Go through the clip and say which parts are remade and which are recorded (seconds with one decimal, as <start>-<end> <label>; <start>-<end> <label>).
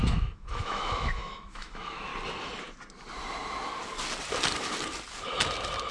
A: 0.0-2.1 remade; 2.1-5.9 recorded